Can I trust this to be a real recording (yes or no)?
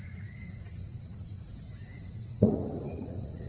no